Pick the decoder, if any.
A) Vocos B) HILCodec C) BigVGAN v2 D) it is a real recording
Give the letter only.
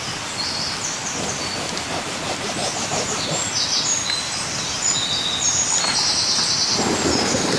D